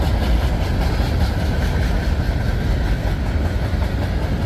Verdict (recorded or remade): recorded